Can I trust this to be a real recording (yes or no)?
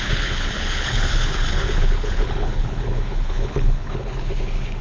no